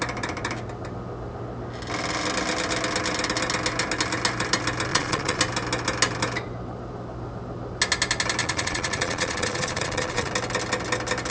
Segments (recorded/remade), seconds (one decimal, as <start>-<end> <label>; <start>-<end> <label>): 0.0-4.9 recorded; 4.9-5.4 remade; 5.4-8.4 recorded; 8.4-10.3 remade; 10.3-11.3 recorded